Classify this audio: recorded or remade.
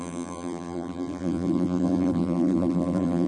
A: remade